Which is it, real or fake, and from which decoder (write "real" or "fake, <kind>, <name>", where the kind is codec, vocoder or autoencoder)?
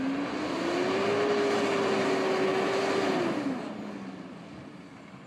real